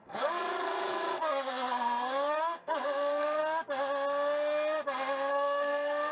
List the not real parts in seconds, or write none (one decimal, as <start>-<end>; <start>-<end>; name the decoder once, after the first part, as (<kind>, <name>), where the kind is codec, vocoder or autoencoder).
0.0-3.4 (codec, SNAC); 5.3-6.1